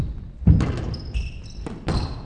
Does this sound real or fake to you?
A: real